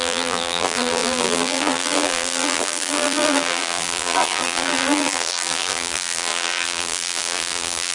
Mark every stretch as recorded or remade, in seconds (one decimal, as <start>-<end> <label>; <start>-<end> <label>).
0.0-7.9 remade